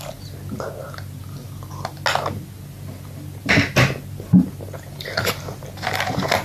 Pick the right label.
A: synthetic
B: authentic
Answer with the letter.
B